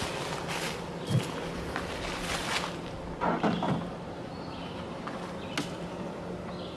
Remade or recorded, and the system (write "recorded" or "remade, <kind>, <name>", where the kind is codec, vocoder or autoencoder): recorded